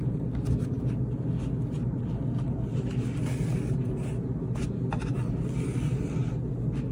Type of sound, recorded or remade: recorded